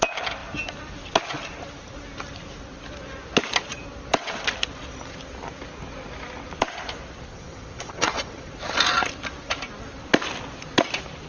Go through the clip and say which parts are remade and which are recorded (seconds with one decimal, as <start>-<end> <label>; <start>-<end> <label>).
0.0-7.3 recorded; 7.3-8.5 remade; 8.5-11.3 recorded